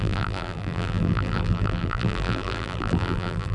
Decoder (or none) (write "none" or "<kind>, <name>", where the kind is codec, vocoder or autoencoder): vocoder, BigVGAN v2